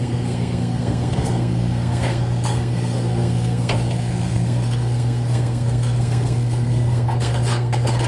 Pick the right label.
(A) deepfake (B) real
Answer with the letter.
A